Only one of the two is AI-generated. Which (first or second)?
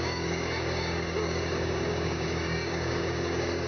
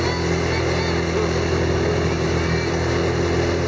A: first